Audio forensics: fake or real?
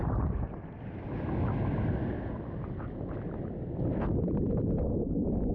real